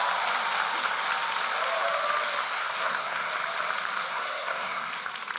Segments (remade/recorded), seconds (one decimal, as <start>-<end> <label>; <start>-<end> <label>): 0.0-2.4 recorded; 2.4-3.3 remade; 3.3-4.1 recorded; 4.1-4.9 remade; 4.9-5.4 recorded